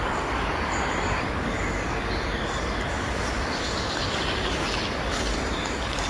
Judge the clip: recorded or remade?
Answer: remade